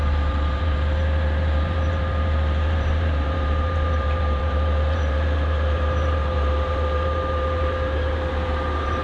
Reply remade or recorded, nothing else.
remade